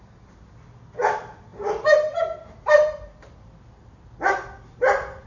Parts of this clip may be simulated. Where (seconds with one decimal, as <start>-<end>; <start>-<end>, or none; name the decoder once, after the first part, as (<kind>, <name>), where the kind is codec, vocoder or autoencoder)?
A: none